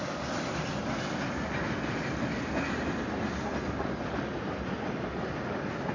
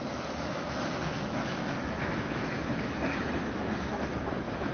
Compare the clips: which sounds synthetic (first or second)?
second